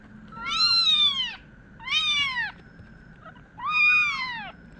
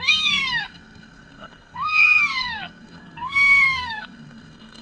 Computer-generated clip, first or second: second